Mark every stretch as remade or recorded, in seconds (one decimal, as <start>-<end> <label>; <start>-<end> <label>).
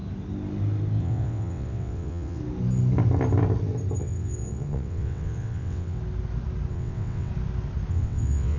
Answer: 0.0-1.0 recorded; 1.0-2.4 remade; 2.4-4.0 recorded; 4.0-6.0 remade; 6.0-6.7 recorded; 6.7-7.3 remade; 7.3-7.9 recorded; 7.9-8.6 remade